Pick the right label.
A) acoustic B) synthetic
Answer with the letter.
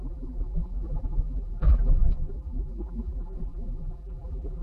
B